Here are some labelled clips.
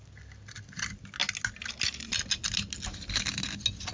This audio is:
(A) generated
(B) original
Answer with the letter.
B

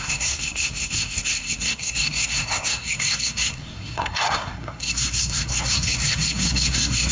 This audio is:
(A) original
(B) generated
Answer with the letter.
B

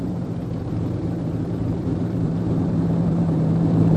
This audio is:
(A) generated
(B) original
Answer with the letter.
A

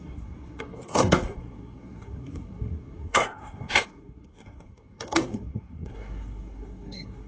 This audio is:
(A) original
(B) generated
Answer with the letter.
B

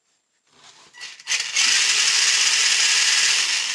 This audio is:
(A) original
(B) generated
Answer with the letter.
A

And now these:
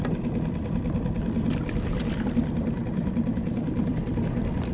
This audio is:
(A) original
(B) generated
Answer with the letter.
A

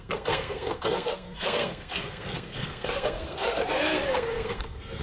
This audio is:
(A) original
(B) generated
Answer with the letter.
B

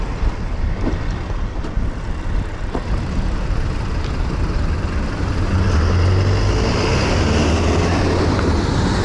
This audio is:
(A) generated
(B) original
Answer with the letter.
B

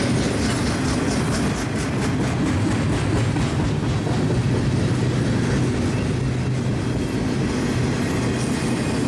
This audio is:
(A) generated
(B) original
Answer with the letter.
B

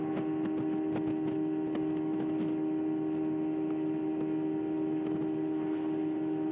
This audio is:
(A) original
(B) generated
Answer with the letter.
A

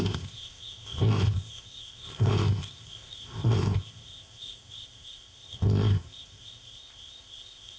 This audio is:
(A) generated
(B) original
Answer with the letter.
A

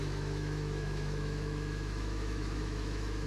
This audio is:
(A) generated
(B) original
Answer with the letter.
A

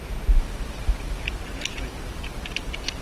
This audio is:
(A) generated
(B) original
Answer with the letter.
B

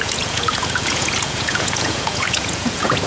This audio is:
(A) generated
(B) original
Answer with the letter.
A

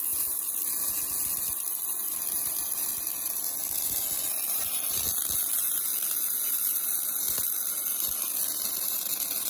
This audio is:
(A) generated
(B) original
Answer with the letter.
B